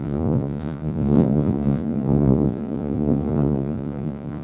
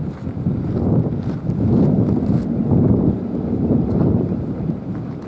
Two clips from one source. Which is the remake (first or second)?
first